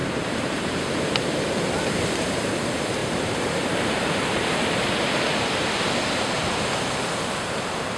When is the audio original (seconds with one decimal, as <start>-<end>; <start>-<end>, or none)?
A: 2.5-3.0; 5.0-8.0